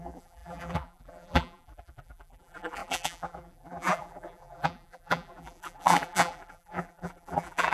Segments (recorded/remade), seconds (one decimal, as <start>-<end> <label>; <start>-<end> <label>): 0.0-7.7 remade